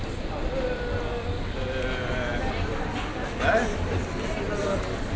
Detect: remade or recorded recorded